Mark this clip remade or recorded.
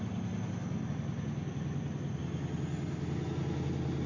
recorded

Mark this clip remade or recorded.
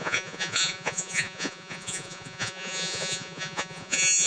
remade